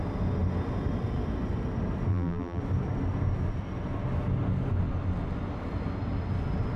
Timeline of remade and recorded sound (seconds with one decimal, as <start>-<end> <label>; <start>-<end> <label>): 0.0-2.1 recorded; 2.1-2.6 remade; 2.6-6.8 recorded